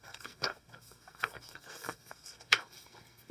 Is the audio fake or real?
fake